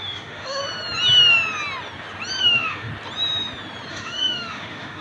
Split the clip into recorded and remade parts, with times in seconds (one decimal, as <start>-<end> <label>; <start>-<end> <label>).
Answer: 0.0-0.6 remade; 0.6-2.4 recorded; 2.4-2.9 remade; 2.9-3.9 recorded; 3.9-5.0 remade